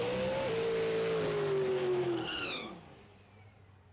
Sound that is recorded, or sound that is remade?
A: recorded